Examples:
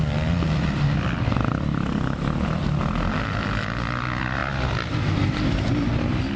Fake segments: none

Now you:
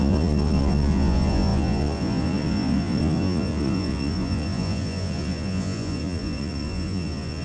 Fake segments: 0.0-7.4 (vocoder, Vocos)